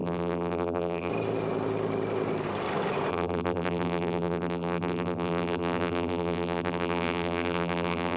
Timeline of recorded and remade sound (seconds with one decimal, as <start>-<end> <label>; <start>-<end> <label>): 0.0-1.1 remade; 1.1-3.1 recorded; 3.1-8.2 remade